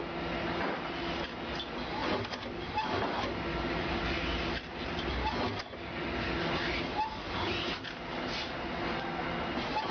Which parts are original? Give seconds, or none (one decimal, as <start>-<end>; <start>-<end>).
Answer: 0.0-9.9